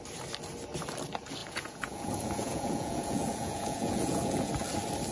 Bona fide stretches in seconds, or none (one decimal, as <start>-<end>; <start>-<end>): 0.0-1.4; 4.5-5.1